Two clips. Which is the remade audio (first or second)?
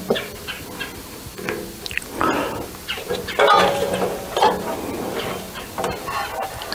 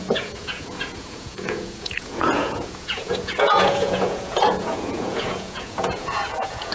second